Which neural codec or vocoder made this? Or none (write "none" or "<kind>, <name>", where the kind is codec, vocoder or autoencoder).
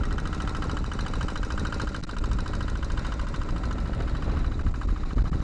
none